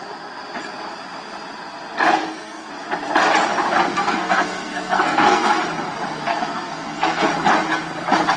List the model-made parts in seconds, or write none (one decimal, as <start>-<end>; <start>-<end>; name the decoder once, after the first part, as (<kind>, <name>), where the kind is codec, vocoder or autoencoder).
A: 2.2-2.7 (codec, SNAC); 3.9-5.6; 6.3-7.3